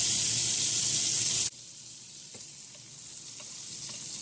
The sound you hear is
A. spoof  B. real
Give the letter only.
B